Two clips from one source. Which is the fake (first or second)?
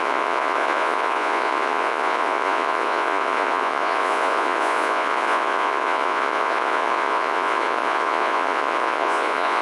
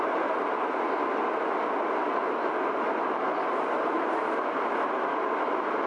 first